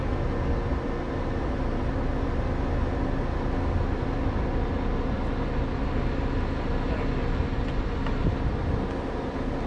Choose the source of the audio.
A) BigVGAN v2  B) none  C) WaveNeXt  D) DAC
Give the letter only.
B